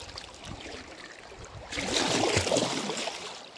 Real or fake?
real